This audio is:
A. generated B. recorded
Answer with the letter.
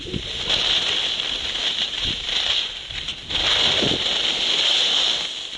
B